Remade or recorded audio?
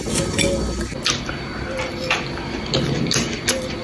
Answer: recorded